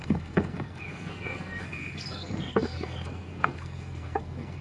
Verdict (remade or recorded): remade